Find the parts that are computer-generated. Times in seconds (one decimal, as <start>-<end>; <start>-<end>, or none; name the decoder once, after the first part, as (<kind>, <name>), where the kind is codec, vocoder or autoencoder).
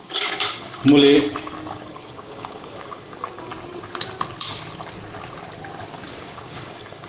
0.0-0.8 (codec, DAC); 1.7-3.5; 6.2-7.1